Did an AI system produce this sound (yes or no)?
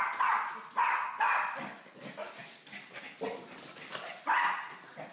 no